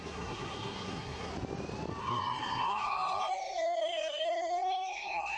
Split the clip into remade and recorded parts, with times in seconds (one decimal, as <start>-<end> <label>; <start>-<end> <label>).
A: 0.0-1.3 remade; 1.3-2.0 recorded; 2.0-5.4 remade